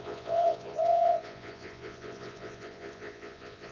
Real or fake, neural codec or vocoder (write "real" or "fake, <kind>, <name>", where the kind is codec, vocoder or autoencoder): fake, vocoder, Vocos